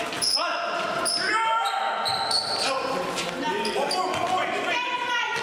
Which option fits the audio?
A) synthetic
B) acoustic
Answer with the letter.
B